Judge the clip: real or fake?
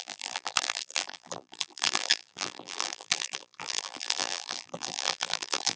fake